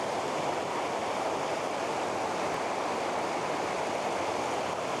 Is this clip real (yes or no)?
yes